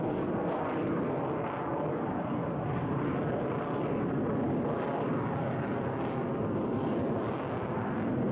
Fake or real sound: fake